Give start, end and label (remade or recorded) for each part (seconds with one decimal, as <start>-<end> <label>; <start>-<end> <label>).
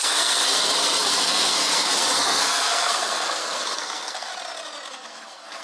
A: 0.0-4.3 remade; 4.3-4.9 recorded; 4.9-5.6 remade